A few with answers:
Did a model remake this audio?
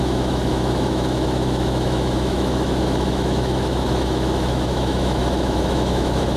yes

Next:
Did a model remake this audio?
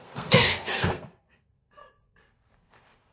yes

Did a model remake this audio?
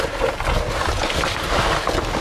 no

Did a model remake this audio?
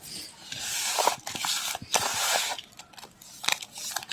yes